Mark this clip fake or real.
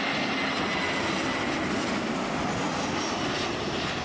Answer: real